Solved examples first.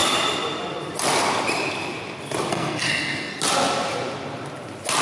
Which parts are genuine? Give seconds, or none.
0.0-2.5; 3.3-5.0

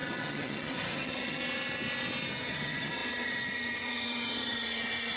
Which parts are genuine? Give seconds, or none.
1.4-2.3

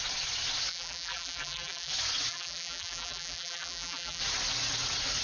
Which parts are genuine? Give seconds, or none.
0.0-0.7; 1.9-2.3; 4.2-5.2

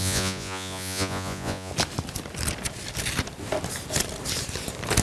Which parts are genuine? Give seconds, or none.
1.7-5.0